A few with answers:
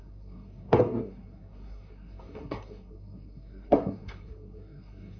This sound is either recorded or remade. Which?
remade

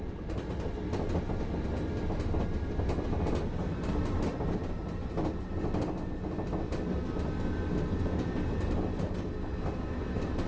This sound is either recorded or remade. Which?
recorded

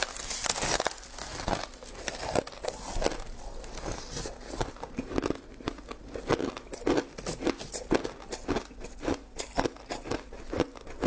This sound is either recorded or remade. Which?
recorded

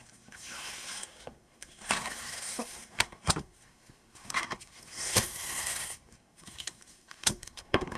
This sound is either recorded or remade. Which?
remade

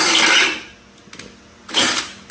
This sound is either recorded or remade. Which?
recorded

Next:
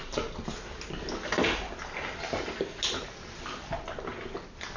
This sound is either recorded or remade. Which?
recorded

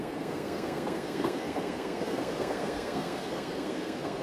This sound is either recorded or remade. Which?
remade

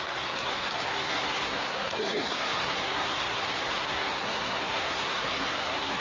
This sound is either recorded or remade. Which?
remade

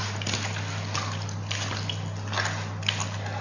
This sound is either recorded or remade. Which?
recorded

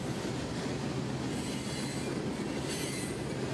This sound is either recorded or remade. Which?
recorded